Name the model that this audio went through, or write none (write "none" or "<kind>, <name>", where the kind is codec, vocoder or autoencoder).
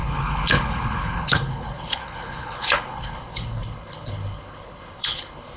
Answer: codec, HILCodec